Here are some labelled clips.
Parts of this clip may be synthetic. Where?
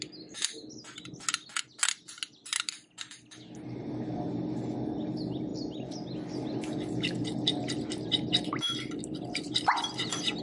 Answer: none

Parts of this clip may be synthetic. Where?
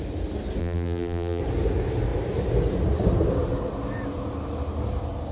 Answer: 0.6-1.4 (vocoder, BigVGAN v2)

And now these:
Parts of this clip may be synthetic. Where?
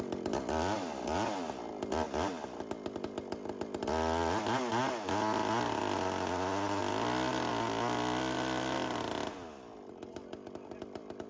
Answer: none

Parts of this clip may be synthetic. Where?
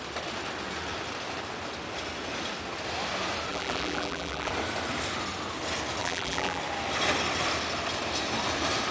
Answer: 3.5-4.5 (vocoder, BigVGAN v2); 6.0-6.6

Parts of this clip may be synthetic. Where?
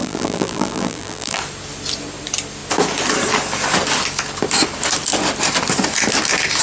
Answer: 0.0-1.4 (vocoder, BigVGAN v2)